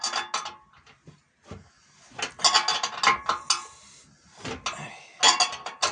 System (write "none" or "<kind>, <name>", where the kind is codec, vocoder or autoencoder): none